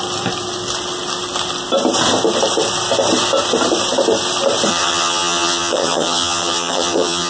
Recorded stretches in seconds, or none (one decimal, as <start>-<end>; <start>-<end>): 0.0-4.7